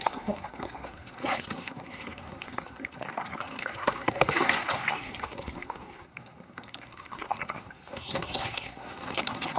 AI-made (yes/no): yes